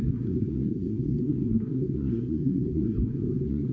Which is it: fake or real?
fake